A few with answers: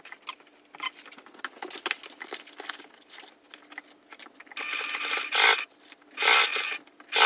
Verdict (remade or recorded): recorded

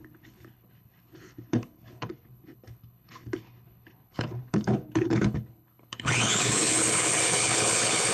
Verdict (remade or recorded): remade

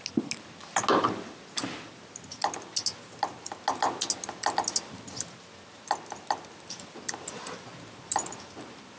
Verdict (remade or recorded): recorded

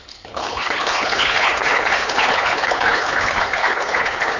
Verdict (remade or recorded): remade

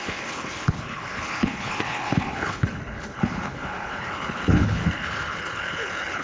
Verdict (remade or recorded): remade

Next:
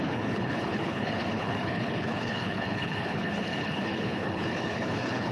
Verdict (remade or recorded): remade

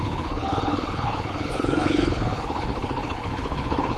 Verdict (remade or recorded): remade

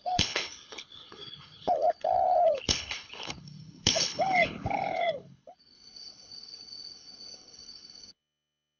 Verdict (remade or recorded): remade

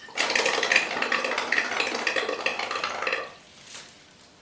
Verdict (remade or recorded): recorded